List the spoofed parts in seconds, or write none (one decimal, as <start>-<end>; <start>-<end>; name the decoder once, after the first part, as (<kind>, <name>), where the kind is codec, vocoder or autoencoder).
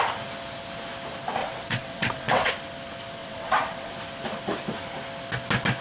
1.4-2.5 (vocoder, WaveNeXt); 3.2-3.9